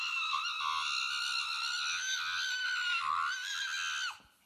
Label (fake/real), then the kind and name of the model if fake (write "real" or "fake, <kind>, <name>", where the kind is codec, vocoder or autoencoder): real